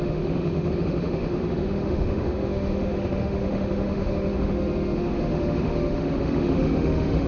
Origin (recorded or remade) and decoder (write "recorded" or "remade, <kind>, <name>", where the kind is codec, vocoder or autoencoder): remade, autoencoder, DAC-VAE